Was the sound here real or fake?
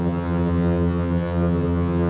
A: fake